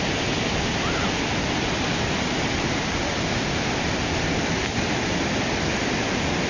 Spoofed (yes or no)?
no